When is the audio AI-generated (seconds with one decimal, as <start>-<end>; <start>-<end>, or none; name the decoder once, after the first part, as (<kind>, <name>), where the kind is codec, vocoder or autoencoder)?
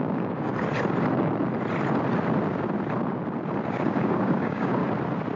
0.0-0.5 (codec, DAC); 3.7-4.8